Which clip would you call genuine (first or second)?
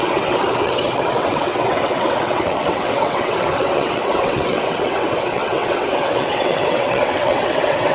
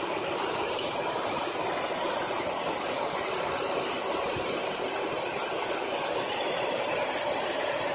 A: second